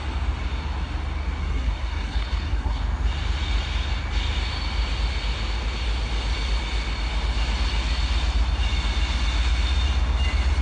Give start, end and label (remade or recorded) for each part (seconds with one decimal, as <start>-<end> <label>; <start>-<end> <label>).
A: 0.0-1.4 recorded; 1.4-2.8 remade; 2.8-10.6 recorded